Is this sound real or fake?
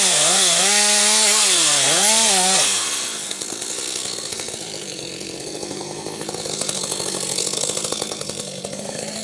fake